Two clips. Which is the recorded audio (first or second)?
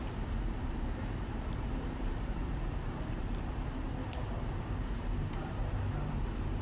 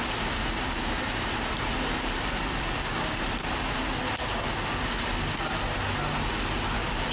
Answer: second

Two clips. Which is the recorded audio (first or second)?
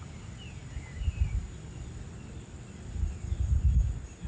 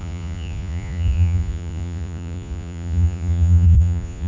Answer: first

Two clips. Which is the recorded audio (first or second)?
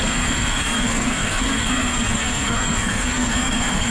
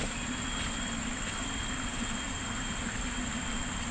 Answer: second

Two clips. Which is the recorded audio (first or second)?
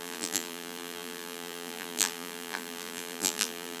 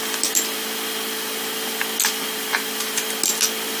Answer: second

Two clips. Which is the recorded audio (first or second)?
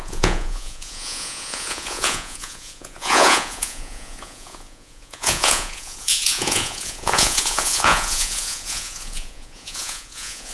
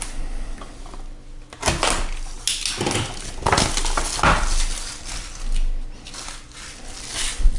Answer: second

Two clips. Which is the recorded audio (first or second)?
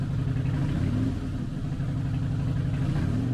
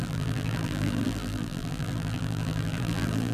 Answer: first